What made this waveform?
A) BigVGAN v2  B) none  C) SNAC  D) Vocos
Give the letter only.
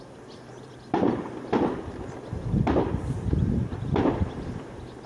A